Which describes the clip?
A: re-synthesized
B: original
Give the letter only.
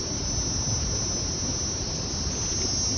B